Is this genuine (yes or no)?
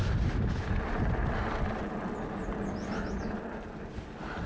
yes